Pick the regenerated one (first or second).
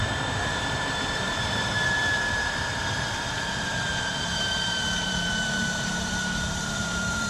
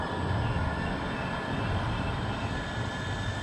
first